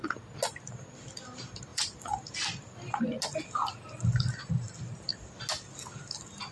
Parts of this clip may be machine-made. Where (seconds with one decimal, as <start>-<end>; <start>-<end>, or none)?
1.7-3.0; 3.6-4.3

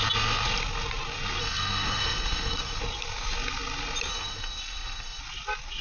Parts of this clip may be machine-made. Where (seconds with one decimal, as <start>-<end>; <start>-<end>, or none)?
1.4-2.8; 4.1-5.2

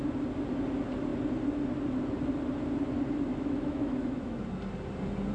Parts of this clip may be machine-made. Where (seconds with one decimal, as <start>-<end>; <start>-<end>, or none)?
3.3-4.4

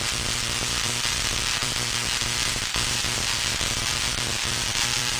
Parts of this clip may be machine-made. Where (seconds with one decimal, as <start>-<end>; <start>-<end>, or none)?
0.0-5.2

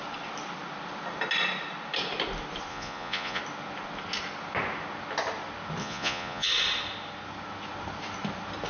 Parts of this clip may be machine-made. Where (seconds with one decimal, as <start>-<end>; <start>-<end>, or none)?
2.7-3.4; 5.8-6.5